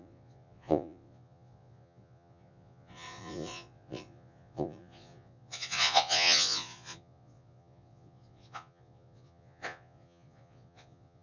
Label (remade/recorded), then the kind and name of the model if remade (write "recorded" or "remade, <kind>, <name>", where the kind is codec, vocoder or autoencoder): remade, vocoder, Vocos